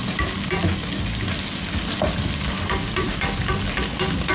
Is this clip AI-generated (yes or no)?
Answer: no